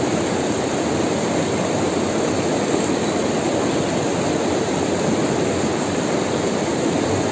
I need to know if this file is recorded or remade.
recorded